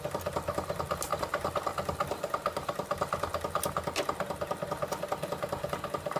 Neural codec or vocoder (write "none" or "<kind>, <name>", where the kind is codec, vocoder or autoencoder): none